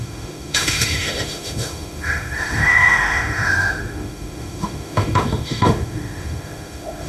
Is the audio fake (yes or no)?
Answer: yes